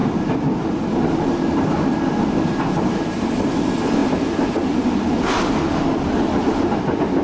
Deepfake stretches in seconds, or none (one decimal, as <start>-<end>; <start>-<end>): none